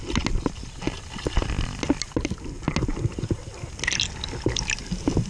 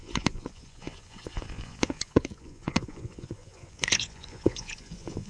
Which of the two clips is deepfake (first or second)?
second